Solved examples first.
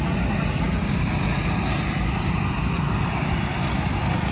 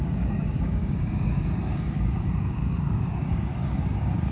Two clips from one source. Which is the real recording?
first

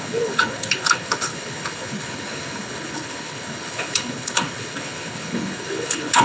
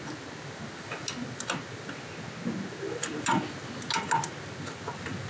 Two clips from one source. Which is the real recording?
second